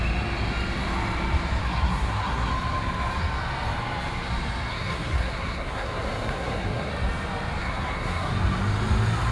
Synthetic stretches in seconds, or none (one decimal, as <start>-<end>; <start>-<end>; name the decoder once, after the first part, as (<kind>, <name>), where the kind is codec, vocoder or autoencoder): 1.6-2.5 (codec, SNAC); 4.7-6.9; 7.6-8.3